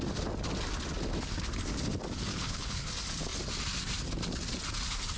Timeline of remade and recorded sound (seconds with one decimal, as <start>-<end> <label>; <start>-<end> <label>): 0.0-2.3 recorded; 2.3-2.9 remade; 2.9-5.2 recorded